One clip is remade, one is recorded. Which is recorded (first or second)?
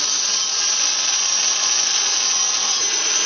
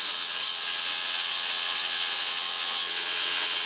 first